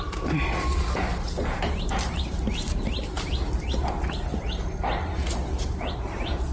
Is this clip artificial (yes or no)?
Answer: no